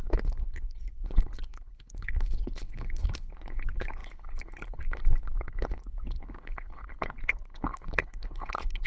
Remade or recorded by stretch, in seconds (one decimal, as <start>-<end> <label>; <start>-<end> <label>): 0.0-8.9 remade